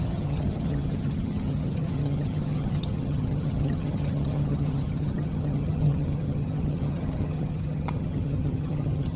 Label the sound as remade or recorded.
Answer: remade